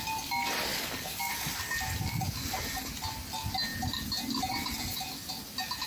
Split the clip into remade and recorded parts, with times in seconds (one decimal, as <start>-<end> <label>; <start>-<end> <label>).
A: 0.0-0.7 recorded; 0.7-1.3 remade; 1.3-5.9 recorded